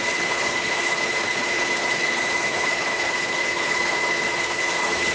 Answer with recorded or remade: remade